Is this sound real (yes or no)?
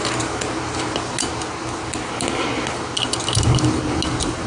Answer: yes